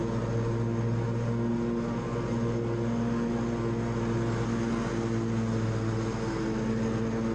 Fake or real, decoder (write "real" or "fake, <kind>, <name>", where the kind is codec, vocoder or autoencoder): real